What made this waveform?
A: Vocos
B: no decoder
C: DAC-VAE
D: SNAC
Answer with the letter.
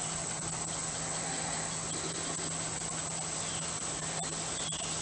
B